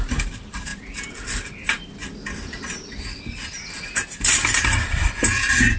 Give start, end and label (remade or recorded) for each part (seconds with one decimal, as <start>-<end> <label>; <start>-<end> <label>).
0.0-0.7 remade; 0.7-4.2 recorded; 4.2-5.8 remade